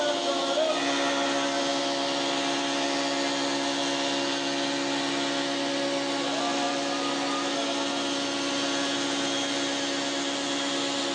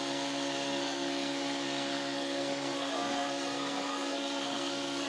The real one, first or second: first